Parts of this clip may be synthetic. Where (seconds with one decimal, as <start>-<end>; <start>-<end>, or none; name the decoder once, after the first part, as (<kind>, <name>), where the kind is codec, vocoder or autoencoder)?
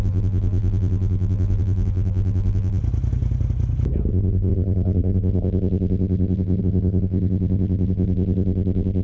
0.0-2.8 (vocoder, BigVGAN v2); 4.1-9.0